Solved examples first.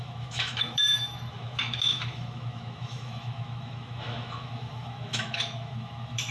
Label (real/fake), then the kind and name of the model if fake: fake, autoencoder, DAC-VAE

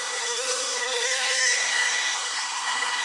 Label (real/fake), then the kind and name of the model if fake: fake, codec, SNAC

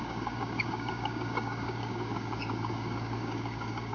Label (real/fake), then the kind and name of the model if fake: fake, codec, DAC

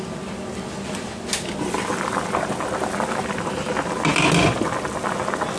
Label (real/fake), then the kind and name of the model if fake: real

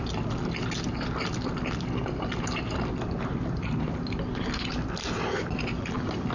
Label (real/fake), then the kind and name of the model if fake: real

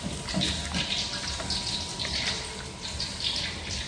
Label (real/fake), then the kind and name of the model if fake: real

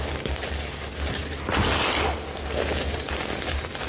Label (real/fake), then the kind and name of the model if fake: real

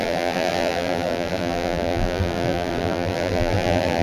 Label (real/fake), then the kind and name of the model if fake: fake, vocoder, BigVGAN v2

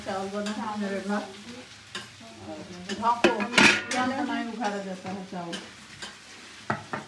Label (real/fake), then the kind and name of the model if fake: real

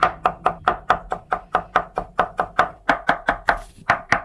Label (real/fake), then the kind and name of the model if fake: real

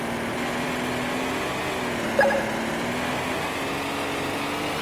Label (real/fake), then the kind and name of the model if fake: real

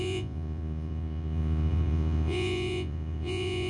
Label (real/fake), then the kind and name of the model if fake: fake, vocoder, Vocos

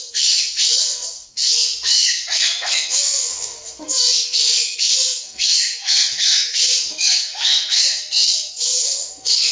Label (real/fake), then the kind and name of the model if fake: fake, codec, SNAC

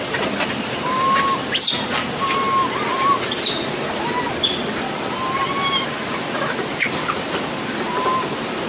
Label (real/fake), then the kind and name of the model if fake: real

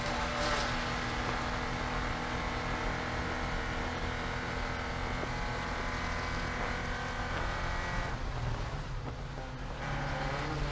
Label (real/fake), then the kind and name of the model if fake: real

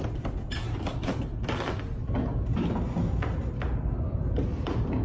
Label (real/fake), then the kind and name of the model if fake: real